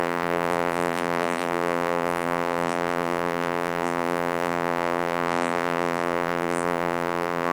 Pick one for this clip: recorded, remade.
remade